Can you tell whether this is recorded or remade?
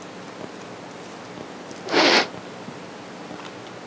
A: recorded